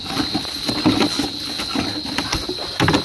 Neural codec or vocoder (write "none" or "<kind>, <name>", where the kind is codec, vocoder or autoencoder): none